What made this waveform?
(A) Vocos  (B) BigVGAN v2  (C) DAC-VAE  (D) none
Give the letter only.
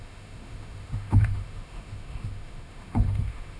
C